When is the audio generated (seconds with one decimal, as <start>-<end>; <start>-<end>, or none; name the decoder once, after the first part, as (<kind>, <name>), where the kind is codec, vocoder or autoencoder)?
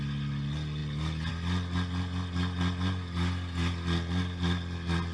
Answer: none